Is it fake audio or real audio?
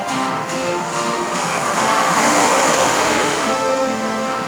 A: fake